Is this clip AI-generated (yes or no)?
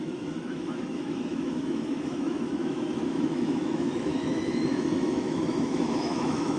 yes